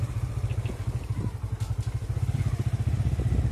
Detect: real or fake real